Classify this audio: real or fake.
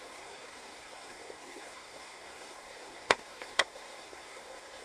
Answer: fake